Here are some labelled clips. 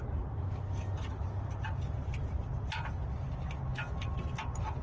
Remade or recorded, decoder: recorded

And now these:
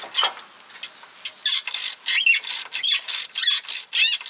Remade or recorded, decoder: recorded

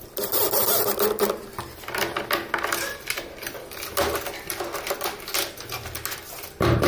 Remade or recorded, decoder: recorded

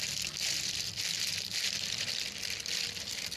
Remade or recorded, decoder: remade, vocoder, BigVGAN v2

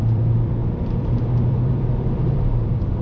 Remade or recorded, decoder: remade, vocoder, BigVGAN v2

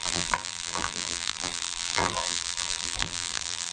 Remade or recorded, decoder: remade, vocoder, BigVGAN v2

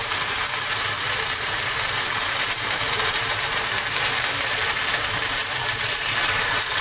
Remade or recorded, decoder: remade, vocoder, BigVGAN v2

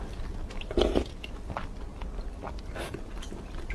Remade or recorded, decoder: recorded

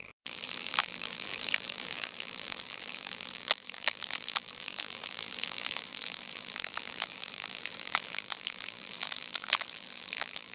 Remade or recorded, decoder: remade, vocoder, BigVGAN v2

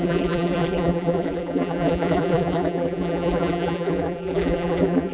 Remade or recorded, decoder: remade, vocoder, BigVGAN v2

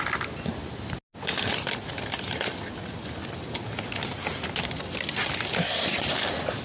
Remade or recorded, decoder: recorded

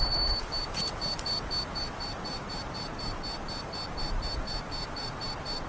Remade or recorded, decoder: remade, vocoder, BigVGAN v2